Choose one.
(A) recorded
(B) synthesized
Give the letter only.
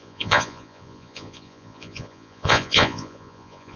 B